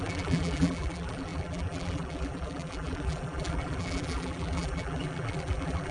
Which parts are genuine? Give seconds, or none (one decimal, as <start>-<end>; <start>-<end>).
none